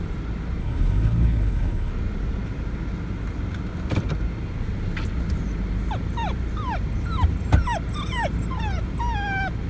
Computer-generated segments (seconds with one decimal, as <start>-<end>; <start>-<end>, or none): 0.6-1.9